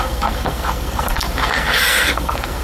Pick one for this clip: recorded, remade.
remade